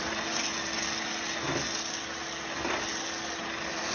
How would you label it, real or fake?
real